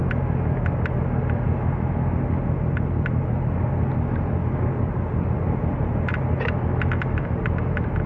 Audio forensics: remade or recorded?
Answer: recorded